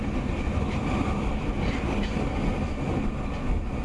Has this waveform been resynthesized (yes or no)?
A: no